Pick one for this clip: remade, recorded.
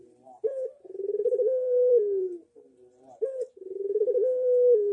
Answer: remade